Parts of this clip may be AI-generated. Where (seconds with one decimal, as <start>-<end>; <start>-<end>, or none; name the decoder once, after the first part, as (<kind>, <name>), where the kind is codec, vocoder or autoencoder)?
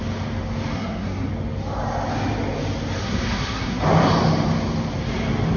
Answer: 0.7-1.3 (codec, SNAC); 3.0-3.8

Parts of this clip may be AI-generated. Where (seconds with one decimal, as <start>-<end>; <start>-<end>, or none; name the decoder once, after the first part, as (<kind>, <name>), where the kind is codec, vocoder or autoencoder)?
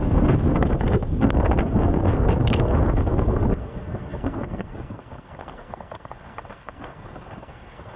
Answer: 0.0-8.0 (codec, SNAC)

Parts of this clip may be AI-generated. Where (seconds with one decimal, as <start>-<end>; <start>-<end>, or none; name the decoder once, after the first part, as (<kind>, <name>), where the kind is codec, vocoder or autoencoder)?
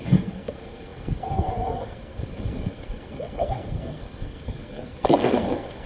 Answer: 0.0-5.9 (codec, SNAC)